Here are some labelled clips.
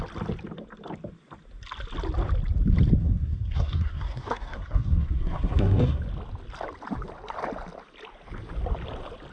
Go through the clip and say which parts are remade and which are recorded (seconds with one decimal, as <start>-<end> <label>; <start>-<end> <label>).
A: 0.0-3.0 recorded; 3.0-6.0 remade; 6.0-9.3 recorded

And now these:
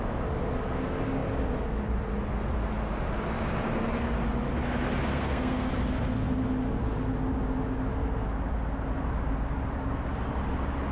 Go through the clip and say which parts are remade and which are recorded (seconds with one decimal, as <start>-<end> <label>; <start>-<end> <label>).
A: 0.0-5.1 recorded; 5.1-5.7 remade; 5.7-10.9 recorded

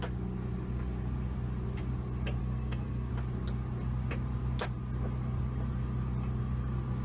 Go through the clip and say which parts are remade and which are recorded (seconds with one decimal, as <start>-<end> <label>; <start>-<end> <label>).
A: 0.0-2.4 recorded; 2.4-3.1 remade; 3.1-7.0 recorded

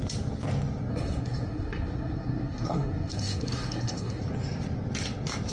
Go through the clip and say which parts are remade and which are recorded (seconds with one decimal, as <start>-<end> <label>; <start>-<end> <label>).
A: 0.0-0.9 recorded; 0.9-4.2 remade; 4.2-5.5 recorded